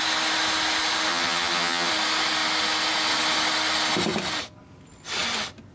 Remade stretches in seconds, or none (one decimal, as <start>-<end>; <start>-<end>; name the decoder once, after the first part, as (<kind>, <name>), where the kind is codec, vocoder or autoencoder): 1.1-1.9 (vocoder, HiFi-GAN)